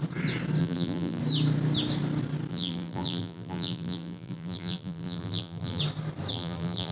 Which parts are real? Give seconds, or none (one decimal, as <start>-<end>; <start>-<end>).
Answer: 0.0-0.6; 1.2-2.5; 5.8-6.3